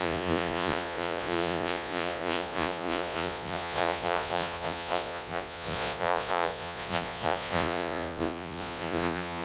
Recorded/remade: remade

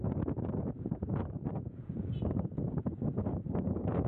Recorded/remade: remade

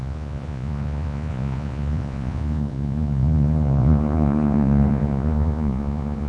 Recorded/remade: remade